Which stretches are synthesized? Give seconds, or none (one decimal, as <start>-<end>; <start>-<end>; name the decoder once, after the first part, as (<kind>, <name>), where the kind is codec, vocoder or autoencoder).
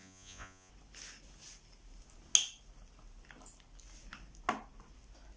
0.0-0.7 (vocoder, Vocos)